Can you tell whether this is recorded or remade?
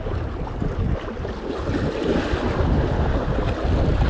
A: recorded